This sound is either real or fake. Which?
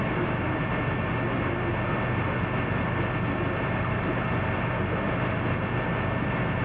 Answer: real